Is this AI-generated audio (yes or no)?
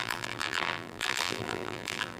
yes